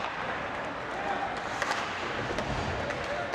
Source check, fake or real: real